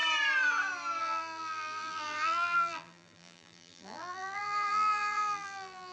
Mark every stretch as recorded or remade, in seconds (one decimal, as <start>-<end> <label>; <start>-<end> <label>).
0.0-1.0 recorded; 1.0-5.9 remade